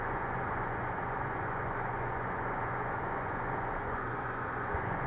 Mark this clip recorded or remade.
remade